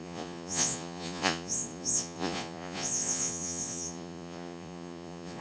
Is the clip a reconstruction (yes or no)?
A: yes